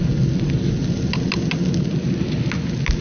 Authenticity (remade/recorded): recorded